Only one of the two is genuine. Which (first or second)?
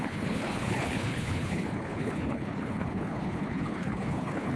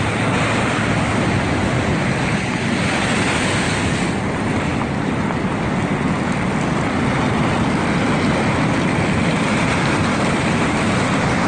second